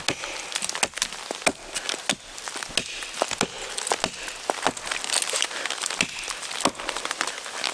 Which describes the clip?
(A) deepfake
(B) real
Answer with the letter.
B